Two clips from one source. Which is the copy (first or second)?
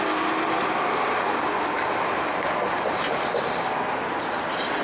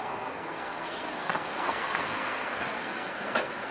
second